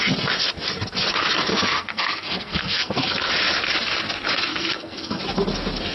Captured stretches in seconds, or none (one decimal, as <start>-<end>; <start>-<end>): 0.0-1.5; 3.3-4.5; 5.2-5.9